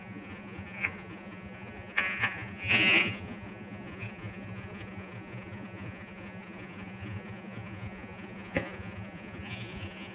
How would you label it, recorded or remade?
remade